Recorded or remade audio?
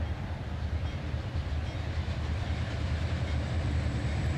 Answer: remade